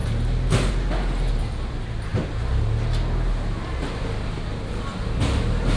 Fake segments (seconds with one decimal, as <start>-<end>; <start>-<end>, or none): none